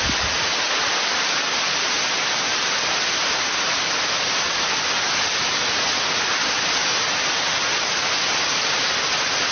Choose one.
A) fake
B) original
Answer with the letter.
B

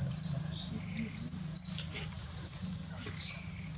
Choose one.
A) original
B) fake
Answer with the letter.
A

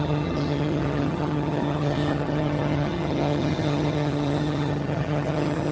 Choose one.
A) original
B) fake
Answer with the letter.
B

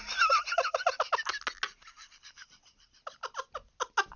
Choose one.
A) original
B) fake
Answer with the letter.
A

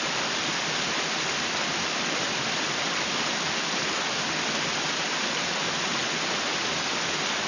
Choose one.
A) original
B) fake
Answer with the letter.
A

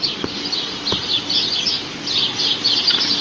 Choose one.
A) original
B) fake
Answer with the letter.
A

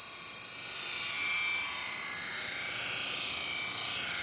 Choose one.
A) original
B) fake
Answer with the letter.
A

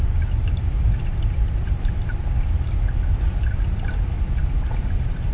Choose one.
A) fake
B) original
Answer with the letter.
B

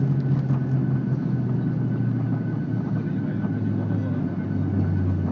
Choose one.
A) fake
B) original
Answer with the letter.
B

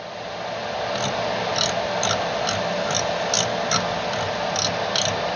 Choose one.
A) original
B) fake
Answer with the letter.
A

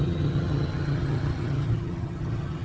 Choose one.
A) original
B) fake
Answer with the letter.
B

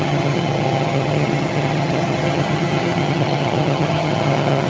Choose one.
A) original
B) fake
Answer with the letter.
B